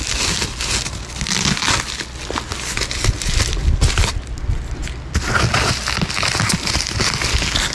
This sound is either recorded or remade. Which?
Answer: recorded